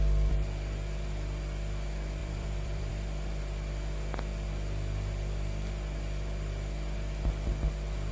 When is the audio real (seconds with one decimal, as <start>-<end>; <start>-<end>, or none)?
0.0-2.2; 2.9-8.1